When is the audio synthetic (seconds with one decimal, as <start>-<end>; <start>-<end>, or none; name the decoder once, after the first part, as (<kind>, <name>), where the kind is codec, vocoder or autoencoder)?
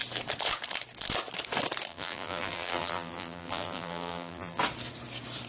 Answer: 1.9-4.6 (vocoder, BigVGAN v2)